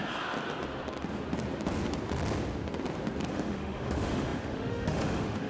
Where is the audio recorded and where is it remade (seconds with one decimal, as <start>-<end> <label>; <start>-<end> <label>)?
0.0-3.3 recorded; 3.3-5.5 remade

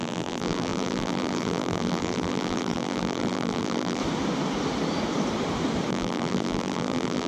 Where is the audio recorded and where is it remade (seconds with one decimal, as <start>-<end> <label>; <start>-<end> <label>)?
0.0-4.0 remade; 4.0-5.9 recorded; 5.9-7.3 remade

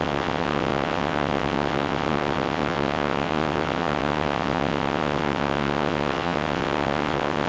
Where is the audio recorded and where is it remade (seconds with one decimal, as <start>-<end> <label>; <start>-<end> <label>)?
0.0-7.5 remade

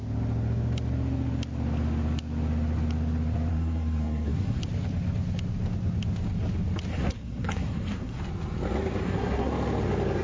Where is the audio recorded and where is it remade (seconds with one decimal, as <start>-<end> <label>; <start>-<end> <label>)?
0.0-3.5 recorded; 3.5-4.6 remade; 4.6-6.9 recorded; 6.9-8.2 remade; 8.2-9.0 recorded; 9.0-9.5 remade; 9.5-10.2 recorded

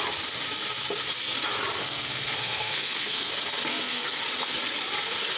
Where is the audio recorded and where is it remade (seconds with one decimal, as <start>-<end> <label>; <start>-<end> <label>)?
0.0-1.8 recorded; 1.8-3.3 remade; 3.3-3.7 recorded; 3.7-4.2 remade; 4.2-5.4 recorded

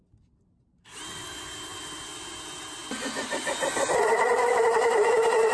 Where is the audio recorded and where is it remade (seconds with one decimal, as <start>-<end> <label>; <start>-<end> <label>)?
0.0-5.5 recorded